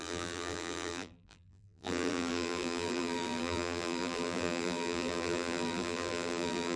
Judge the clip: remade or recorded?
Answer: remade